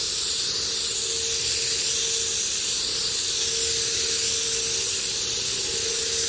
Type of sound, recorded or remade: recorded